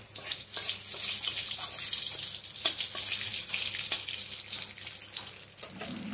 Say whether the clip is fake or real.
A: real